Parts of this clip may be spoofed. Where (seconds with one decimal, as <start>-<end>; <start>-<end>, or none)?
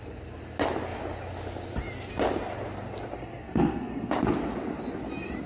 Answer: 3.2-4.1